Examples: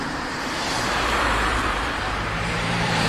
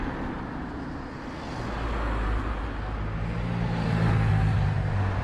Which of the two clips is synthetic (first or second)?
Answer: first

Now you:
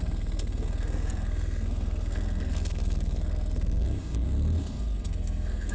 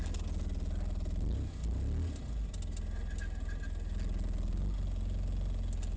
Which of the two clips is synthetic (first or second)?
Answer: first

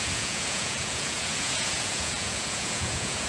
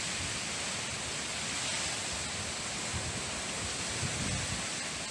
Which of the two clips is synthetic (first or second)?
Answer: first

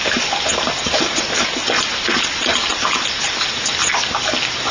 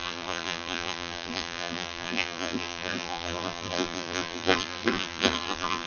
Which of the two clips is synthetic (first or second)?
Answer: second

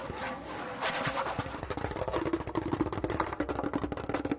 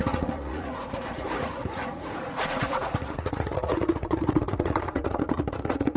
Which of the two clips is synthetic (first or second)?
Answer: second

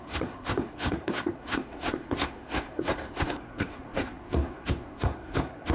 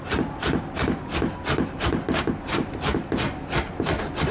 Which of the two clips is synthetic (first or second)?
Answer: first